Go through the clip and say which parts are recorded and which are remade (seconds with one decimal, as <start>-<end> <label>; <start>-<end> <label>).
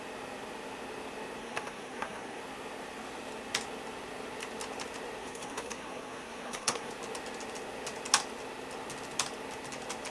0.0-1.4 recorded; 1.4-2.4 remade; 2.4-5.2 recorded; 5.2-6.9 remade; 6.9-10.1 recorded